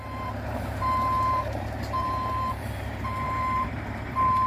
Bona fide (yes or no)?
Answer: no